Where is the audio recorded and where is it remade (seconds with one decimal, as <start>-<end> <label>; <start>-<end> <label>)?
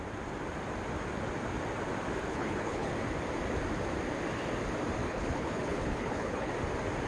0.0-2.3 recorded; 2.3-2.9 remade; 2.9-5.0 recorded; 5.0-6.5 remade; 6.5-7.1 recorded